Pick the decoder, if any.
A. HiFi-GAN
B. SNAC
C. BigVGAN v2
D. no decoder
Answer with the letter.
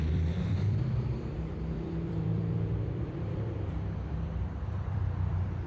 C